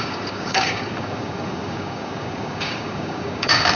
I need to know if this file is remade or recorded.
remade